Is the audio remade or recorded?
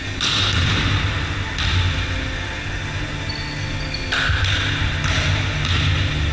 recorded